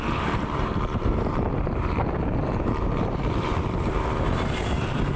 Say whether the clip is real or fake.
fake